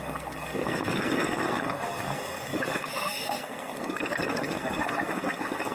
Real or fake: fake